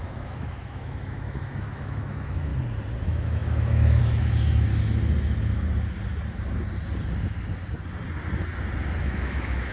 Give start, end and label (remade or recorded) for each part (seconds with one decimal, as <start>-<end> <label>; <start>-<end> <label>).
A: 0.0-2.5 remade; 2.5-3.0 recorded; 3.0-4.7 remade; 4.7-9.0 recorded; 9.0-9.7 remade